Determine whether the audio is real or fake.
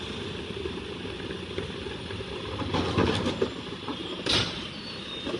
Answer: real